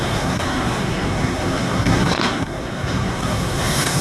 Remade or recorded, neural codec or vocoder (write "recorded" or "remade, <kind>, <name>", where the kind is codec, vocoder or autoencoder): remade, codec, SNAC